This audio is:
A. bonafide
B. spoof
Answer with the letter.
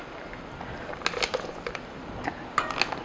A